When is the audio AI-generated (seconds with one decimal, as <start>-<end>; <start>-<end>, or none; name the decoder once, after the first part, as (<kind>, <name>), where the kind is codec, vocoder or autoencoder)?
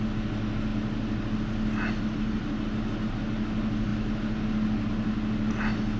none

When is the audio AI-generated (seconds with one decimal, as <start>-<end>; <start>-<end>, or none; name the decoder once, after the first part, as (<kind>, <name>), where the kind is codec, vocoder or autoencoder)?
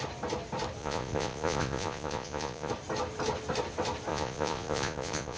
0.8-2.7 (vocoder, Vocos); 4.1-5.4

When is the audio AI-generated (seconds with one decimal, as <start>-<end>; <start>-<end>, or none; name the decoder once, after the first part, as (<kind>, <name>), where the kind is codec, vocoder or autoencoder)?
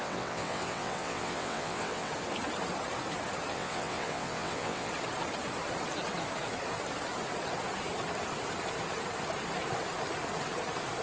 0.0-2.1 (vocoder, WaveNeXt); 3.5-4.9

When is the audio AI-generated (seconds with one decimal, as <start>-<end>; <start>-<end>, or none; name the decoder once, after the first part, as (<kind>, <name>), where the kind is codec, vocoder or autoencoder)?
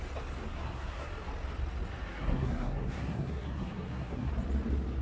0.5-1.1 (codec, SNAC); 2.1-4.3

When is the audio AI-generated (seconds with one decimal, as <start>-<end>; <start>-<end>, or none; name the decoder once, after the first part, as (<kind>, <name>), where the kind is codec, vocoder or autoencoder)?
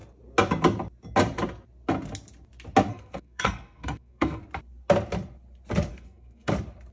2.9-4.4 (codec, SNAC); 5.9-6.5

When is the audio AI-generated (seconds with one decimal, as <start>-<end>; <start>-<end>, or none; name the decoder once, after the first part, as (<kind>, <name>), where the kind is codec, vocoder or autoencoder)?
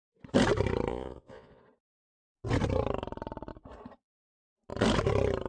0.9-1.6 (vocoder, Vocos)